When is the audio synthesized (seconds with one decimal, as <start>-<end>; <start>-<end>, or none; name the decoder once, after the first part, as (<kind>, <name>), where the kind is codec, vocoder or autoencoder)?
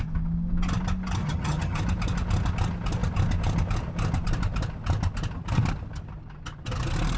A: 1.2-1.8 (vocoder, HiFi-GAN)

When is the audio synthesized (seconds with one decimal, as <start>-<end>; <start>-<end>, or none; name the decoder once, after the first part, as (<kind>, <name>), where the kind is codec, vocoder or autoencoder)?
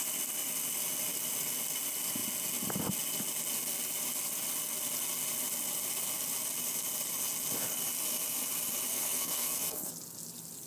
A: 8.9-9.9 (codec, SNAC)